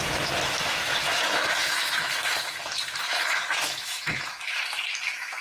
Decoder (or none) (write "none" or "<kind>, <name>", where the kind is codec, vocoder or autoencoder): autoencoder, DAC-VAE